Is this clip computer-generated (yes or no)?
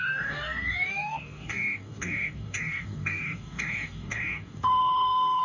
yes